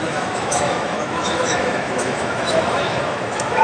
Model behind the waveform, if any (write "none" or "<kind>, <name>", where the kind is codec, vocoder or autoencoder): autoencoder, DAC-VAE